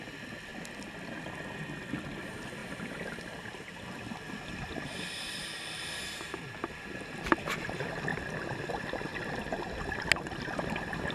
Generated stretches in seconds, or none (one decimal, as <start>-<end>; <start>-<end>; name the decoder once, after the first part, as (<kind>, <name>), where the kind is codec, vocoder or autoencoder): 2.6-3.8 (vocoder, BigVGAN v2)